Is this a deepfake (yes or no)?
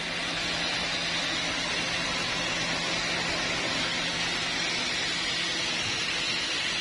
no